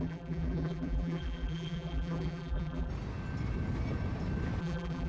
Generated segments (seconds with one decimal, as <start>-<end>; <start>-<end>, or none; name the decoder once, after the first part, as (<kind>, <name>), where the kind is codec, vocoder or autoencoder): 0.0-2.9 (vocoder, BigVGAN v2); 4.6-5.1